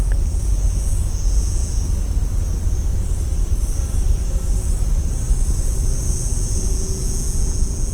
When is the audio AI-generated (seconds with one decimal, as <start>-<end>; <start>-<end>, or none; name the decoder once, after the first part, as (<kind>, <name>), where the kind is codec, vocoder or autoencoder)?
2.9-6.7 (vocoder, BigVGAN v2)